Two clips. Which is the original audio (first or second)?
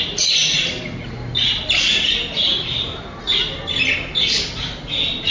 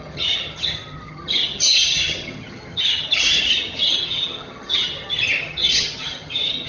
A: first